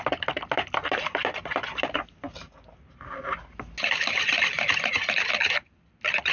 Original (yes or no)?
yes